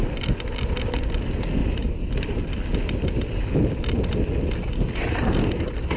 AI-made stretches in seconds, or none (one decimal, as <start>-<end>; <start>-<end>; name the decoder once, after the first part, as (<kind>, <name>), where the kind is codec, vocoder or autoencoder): none